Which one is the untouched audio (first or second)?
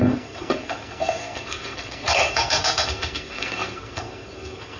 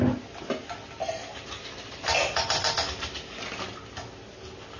second